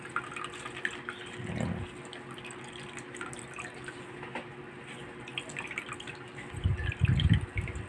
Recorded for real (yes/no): yes